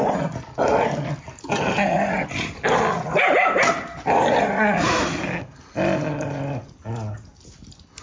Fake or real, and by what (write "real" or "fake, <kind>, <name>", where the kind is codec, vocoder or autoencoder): real